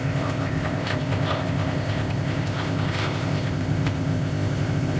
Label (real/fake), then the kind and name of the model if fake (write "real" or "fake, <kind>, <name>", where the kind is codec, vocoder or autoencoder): fake, codec, ZipCodec